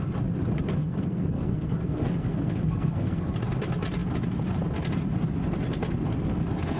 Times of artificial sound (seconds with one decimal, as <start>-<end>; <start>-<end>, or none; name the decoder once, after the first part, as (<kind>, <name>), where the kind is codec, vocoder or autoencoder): 0.8-3.4 (codec, SNAC)